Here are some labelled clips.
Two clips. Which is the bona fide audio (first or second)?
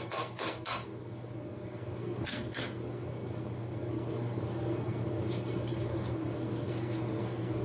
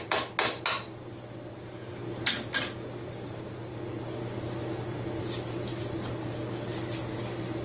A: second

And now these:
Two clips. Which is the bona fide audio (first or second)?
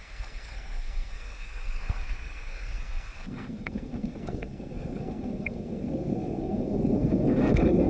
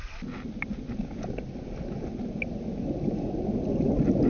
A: second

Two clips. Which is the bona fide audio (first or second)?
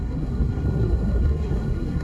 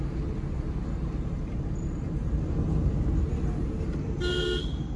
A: second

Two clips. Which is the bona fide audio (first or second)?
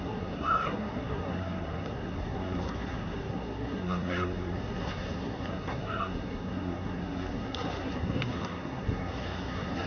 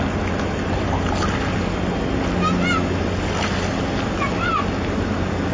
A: second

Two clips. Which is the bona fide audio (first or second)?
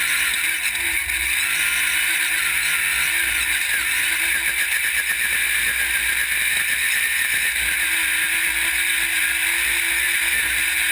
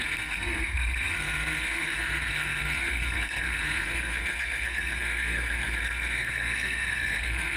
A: first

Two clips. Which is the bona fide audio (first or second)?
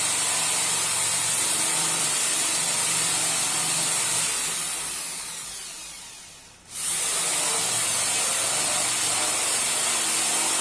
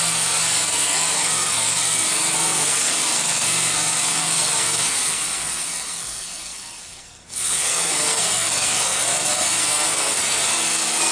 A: first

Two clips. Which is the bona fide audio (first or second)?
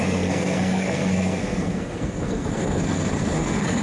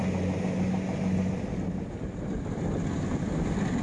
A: second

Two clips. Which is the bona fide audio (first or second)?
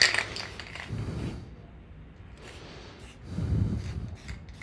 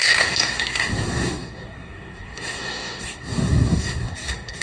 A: first